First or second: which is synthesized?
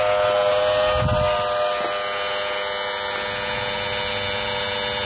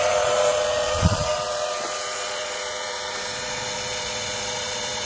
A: second